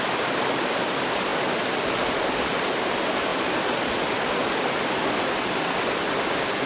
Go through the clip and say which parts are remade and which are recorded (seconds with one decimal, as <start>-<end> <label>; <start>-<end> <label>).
0.0-6.7 recorded